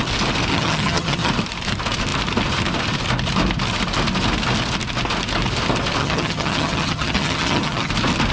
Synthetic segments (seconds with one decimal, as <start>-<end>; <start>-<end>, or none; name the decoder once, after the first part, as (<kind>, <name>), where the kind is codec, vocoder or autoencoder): 0.5-1.3 (vocoder, HiFi-GAN); 6.0-7.9